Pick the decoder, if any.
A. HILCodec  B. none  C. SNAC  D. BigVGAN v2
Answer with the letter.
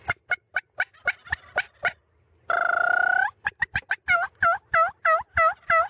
B